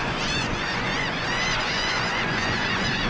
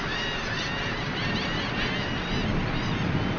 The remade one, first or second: first